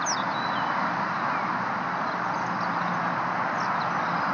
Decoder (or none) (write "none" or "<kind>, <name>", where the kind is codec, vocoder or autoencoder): none